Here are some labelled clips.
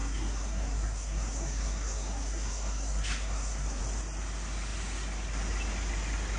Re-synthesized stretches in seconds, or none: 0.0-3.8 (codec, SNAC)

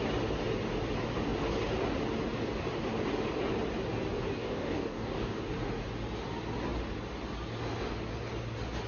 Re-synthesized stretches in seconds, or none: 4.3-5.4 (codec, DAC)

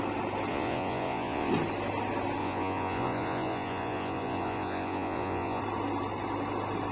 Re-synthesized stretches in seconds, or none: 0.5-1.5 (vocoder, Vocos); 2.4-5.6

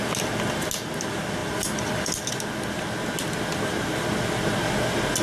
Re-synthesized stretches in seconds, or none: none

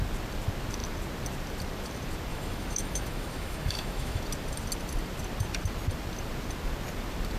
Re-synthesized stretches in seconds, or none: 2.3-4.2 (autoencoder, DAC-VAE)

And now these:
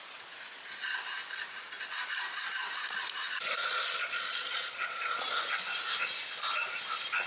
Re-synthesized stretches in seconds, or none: 3.6-5.2 (vocoder, Vocos)